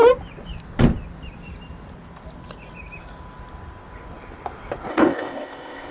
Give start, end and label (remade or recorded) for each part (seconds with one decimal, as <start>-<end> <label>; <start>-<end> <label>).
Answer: 0.0-4.9 recorded; 4.9-5.9 remade